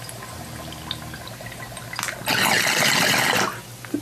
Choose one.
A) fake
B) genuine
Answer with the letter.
B